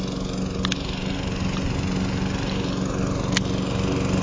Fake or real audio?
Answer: real